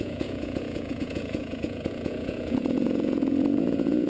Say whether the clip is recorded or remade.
remade